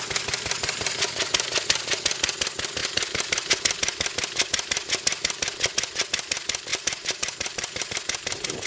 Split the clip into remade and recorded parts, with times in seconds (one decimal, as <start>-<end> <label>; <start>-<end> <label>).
0.0-6.7 recorded; 6.7-7.9 remade; 7.9-8.7 recorded